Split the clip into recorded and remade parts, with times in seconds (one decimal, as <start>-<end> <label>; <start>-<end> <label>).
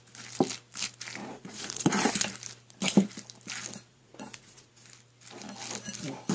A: 0.0-1.2 recorded; 1.2-2.1 remade; 2.1-3.9 recorded; 3.9-4.7 remade; 4.7-6.3 recorded